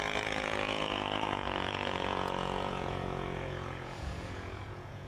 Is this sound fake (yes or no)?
yes